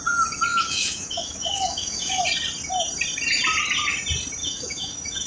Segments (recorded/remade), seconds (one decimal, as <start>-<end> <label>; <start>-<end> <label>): 0.0-0.5 recorded; 0.5-2.2 remade; 2.2-4.4 recorded; 4.4-5.3 remade